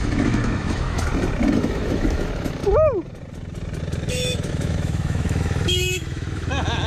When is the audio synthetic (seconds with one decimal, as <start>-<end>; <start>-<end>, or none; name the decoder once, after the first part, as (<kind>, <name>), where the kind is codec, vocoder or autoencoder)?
0.0-1.1 (autoencoder, DAC-VAE); 1.6-2.6; 4.1-6.9